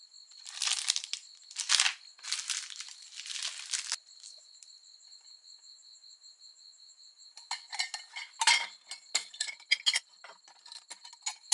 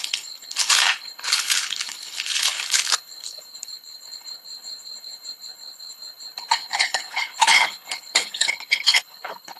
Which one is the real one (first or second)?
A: first